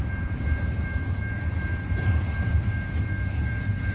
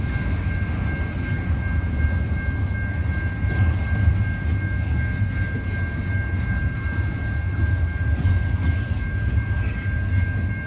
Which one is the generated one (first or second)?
first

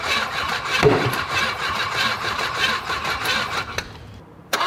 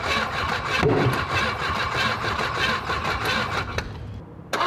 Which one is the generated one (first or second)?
first